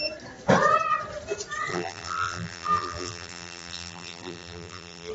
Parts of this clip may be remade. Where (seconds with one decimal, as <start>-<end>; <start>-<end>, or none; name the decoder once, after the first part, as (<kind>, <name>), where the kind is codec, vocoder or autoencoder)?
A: 1.7-5.1 (vocoder, BigVGAN v2)